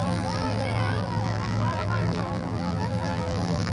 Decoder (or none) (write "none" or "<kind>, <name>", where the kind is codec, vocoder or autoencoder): vocoder, BigVGAN v2